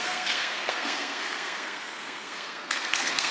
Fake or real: fake